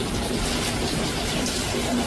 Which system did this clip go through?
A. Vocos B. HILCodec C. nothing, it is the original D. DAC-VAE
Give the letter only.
C